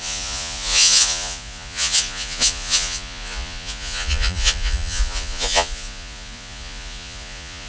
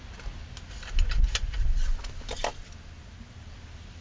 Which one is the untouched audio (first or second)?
second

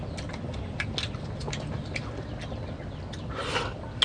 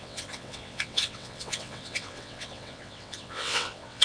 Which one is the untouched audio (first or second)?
first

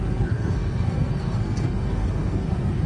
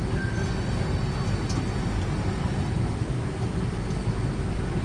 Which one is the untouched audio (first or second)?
second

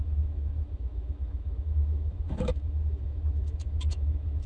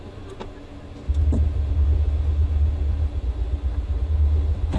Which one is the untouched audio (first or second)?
second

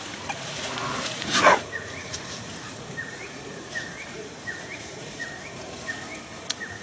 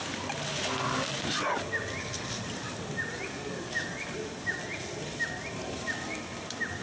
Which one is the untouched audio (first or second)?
second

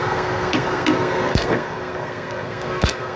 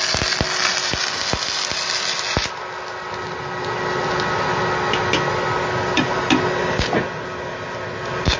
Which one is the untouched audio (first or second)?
second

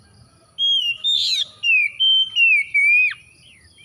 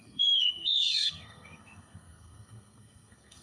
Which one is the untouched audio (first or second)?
first